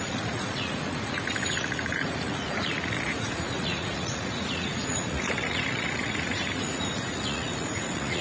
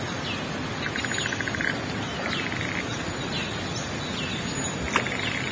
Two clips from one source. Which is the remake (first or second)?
first